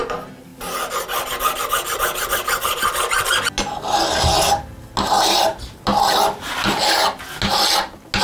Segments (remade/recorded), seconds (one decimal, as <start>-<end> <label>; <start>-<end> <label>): 0.0-8.2 recorded